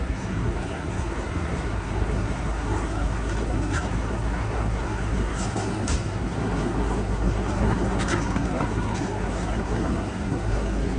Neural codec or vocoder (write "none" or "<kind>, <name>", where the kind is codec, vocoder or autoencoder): codec, SNAC